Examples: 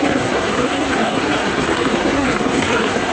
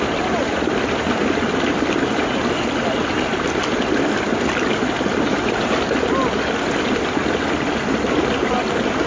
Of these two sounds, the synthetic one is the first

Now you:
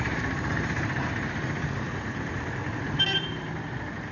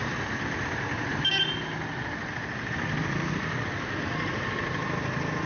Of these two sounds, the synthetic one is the first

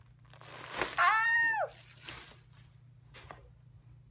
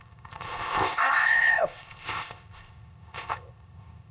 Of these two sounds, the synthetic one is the second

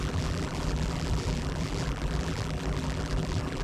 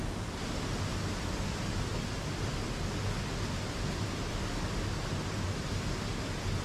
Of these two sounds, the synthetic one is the first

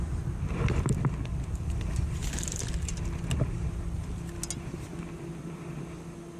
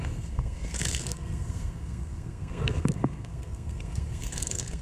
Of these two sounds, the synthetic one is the second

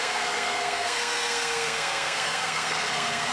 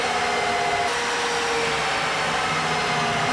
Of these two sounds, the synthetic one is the first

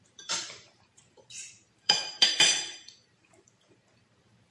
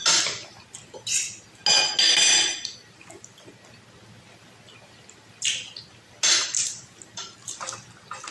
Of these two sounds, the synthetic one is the first